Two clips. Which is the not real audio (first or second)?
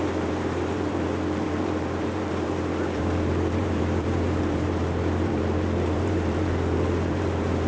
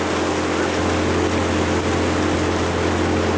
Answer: first